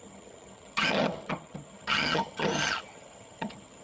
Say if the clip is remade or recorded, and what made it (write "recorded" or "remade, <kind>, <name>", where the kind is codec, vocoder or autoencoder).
remade, vocoder, HiFi-GAN